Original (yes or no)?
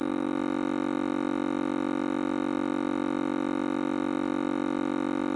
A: yes